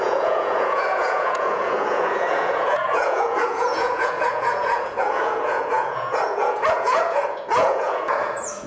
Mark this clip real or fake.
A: fake